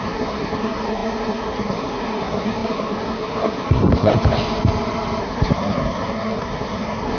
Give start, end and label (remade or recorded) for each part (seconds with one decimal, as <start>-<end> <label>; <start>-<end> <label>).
0.0-4.1 remade; 4.1-5.2 recorded; 5.2-7.2 remade

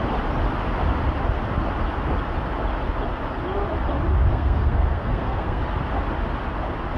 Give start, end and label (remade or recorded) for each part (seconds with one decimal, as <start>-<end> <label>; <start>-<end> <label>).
0.0-4.3 recorded; 4.3-5.6 remade; 5.6-7.0 recorded

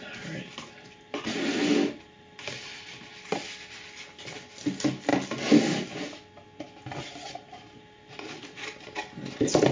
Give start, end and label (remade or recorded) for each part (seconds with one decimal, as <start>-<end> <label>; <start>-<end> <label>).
0.0-9.7 recorded

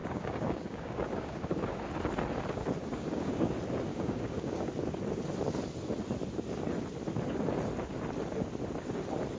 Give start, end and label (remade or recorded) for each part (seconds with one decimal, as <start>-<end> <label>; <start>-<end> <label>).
0.0-1.8 remade; 1.8-2.8 recorded; 2.8-3.5 remade; 3.5-3.9 recorded; 3.9-4.7 remade; 4.7-9.4 recorded

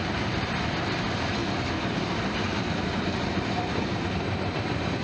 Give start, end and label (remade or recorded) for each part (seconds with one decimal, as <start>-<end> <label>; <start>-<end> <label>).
0.0-5.0 remade

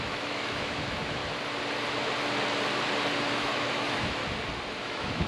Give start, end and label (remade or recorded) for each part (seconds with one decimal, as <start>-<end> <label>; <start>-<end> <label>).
0.0-1.2 remade; 1.2-3.3 recorded; 3.3-4.2 remade; 4.2-4.8 recorded; 4.8-5.3 remade

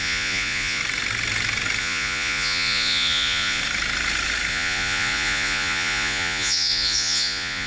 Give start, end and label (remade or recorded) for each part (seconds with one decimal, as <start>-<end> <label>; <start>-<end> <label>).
0.0-0.8 remade; 0.8-1.8 recorded; 1.8-3.6 remade; 3.6-4.5 recorded; 4.5-7.7 remade